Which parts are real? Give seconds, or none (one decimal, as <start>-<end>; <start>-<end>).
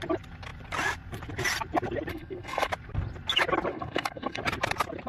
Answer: 0.0-2.1; 2.7-3.7; 4.4-5.1